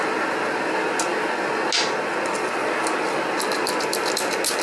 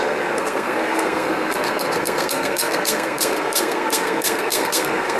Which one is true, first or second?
first